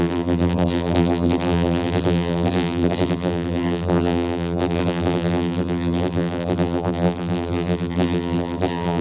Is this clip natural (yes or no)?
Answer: no